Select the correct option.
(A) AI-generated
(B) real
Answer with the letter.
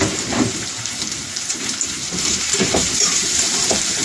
A